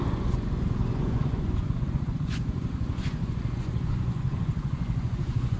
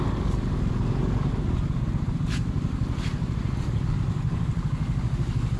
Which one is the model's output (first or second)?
first